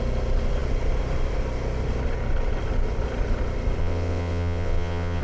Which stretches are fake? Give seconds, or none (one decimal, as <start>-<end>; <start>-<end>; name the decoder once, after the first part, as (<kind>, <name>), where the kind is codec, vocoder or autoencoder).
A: 3.8-5.2 (vocoder, WaveNeXt)

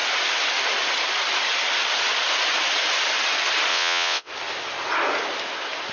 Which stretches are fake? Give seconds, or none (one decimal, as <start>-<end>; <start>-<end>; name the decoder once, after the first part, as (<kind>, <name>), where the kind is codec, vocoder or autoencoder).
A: 3.7-4.3 (vocoder, WaveNeXt)